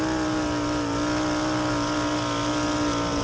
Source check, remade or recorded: recorded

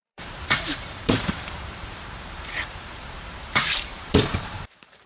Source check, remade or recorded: remade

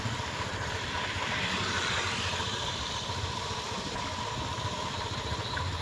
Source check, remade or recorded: remade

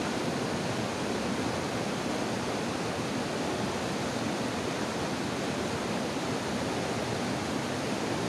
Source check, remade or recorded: recorded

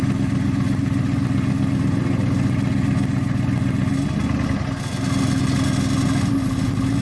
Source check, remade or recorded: recorded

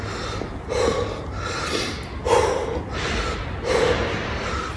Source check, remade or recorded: recorded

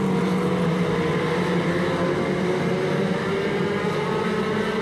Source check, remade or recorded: recorded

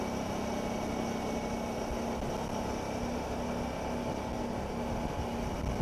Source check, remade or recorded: recorded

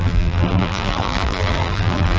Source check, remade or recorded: remade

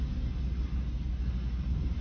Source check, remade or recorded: recorded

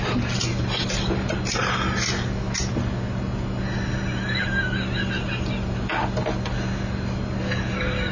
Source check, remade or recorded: recorded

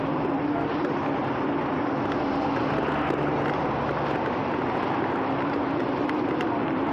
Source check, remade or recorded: recorded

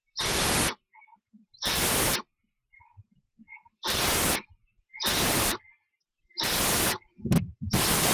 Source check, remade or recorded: remade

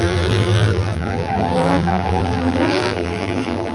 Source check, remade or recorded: remade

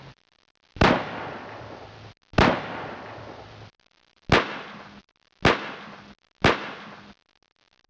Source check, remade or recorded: recorded